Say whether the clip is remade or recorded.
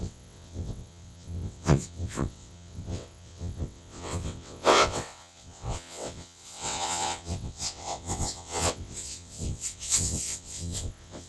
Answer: remade